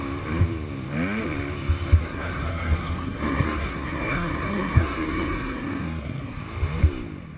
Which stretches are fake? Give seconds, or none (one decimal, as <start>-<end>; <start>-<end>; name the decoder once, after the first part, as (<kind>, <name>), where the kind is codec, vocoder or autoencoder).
2.0-6.4 (codec, SNAC)